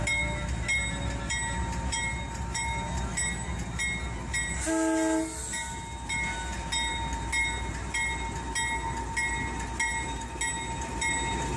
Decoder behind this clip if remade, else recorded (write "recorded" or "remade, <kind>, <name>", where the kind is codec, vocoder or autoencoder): recorded